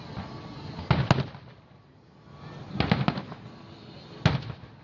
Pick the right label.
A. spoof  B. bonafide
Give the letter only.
B